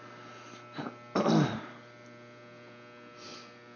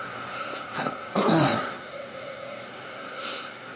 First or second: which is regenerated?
second